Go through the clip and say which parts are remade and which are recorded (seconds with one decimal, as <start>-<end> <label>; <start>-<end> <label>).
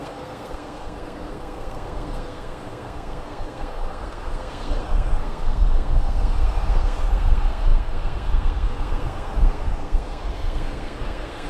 0.0-11.5 remade